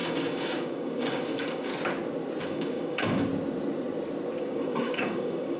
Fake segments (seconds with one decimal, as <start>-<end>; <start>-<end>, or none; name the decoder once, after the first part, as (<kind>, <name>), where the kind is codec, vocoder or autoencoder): 0.0-1.7 (codec, DAC); 2.4-3.3; 4.4-5.6